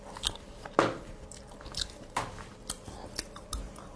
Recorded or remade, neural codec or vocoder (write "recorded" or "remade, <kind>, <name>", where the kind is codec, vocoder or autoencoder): recorded